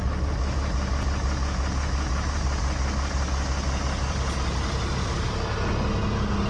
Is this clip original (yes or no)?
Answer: yes